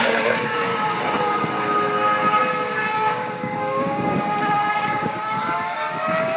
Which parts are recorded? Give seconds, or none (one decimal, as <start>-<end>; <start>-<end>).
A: 0.7-2.4